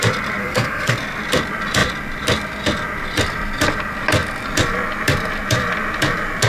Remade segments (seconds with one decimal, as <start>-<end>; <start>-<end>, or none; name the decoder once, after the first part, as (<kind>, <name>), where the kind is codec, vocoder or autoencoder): 0.4-1.0 (codec, SNAC)